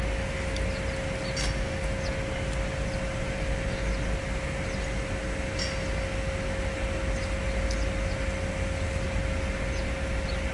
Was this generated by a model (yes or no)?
no